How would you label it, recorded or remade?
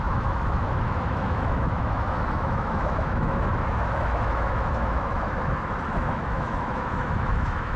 remade